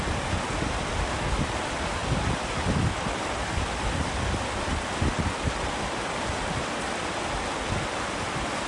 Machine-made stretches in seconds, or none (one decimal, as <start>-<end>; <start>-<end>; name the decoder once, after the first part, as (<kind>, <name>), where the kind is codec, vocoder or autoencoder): 0.0-8.7 (vocoder, BigVGAN v2)